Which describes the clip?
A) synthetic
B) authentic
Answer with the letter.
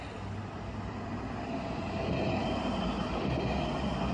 B